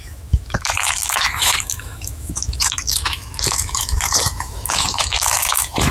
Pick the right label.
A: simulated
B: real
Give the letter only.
A